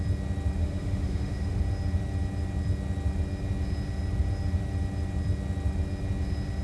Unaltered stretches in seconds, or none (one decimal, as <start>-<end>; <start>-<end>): 0.0-0.6; 1.6-6.6